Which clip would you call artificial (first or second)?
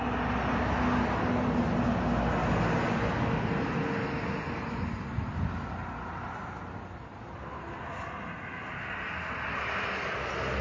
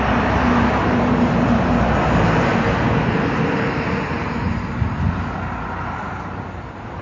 second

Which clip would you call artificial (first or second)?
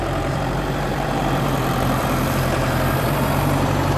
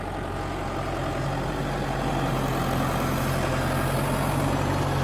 first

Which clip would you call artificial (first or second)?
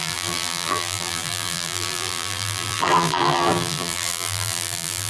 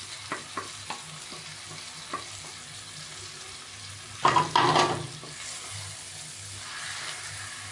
first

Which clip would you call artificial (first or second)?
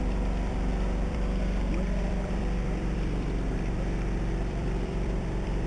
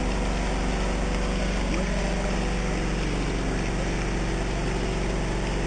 first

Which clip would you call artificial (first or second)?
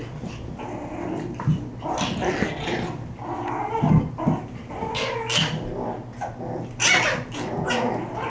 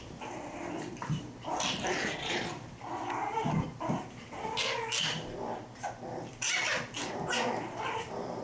second